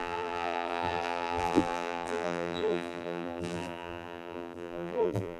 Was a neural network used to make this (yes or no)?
yes